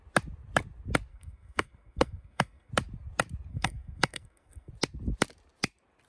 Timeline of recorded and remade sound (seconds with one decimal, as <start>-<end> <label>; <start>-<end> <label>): 0.0-1.1 recorded; 1.1-2.7 remade; 2.7-3.5 recorded; 3.5-4.7 remade; 4.7-6.1 recorded

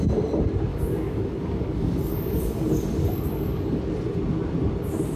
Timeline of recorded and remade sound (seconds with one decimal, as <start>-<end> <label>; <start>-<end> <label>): 0.0-0.7 recorded; 0.7-3.8 remade; 3.8-5.2 recorded